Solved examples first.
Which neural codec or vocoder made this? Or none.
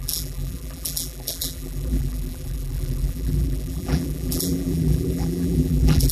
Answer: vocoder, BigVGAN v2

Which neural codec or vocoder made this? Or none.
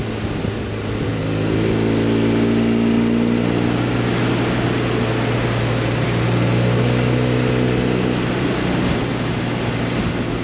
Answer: none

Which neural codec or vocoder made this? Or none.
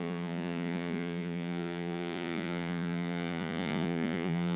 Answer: vocoder, Vocos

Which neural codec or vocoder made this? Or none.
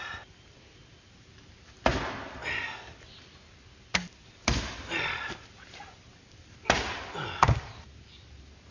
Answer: none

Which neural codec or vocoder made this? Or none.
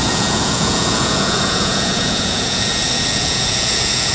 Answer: vocoder, Vocos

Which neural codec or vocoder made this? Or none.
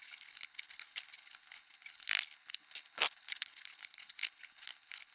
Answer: codec, HILCodec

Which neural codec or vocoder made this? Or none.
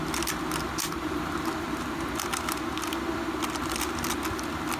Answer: none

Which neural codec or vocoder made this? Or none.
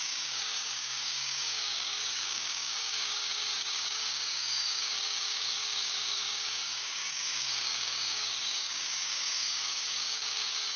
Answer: codec, DAC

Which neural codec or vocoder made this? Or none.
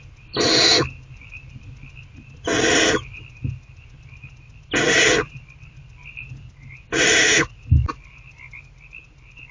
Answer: none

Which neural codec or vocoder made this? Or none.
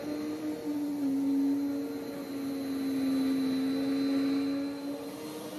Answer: none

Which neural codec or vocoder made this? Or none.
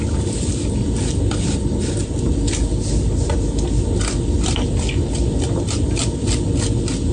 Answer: none